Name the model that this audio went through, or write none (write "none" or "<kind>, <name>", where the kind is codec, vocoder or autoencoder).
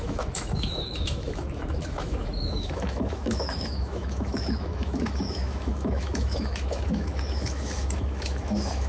autoencoder, DAC-VAE